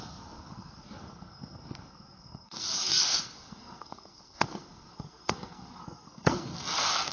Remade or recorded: remade